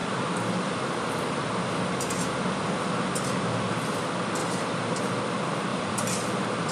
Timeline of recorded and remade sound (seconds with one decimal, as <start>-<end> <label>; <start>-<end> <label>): 0.0-4.0 remade; 4.0-4.4 recorded; 4.4-5.0 remade; 5.0-5.7 recorded; 5.7-6.7 remade